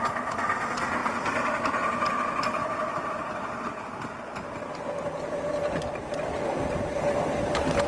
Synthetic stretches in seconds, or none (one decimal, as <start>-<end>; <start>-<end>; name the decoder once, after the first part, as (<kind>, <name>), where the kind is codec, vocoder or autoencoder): none